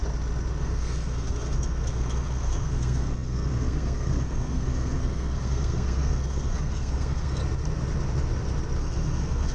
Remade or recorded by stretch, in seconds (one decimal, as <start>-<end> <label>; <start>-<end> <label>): 0.0-0.6 recorded; 0.6-7.4 remade; 7.4-8.8 recorded; 8.8-9.5 remade